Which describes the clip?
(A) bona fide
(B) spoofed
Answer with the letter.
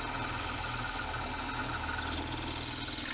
A